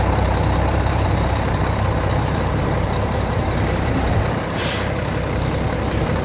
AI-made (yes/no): yes